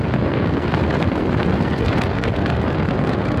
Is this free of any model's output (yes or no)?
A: no